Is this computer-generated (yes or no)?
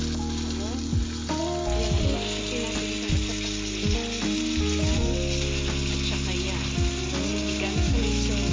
no